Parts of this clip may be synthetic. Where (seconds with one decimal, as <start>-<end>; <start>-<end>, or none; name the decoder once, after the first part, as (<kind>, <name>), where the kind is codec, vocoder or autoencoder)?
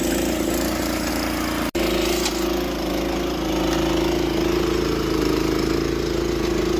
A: none